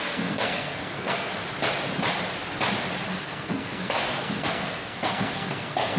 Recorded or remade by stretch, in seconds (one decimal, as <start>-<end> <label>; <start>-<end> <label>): 0.0-1.4 remade; 1.4-3.2 recorded; 3.2-6.0 remade